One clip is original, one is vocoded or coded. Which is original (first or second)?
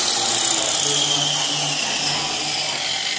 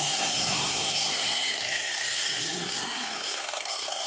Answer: first